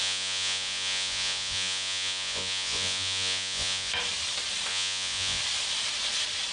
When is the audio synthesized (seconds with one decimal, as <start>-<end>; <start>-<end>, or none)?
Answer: 0.0-3.9; 4.7-5.4